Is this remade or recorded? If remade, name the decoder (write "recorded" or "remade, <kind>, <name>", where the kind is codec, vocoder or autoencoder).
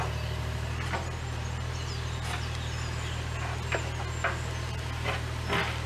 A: recorded